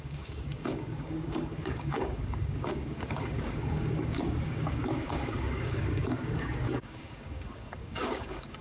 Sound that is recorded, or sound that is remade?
remade